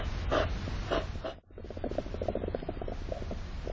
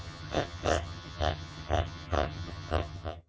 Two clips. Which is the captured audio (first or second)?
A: first